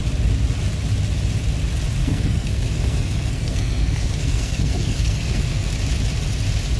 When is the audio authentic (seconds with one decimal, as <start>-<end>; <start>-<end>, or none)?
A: 0.0-2.0; 5.7-6.8